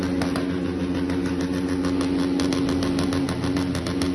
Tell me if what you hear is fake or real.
real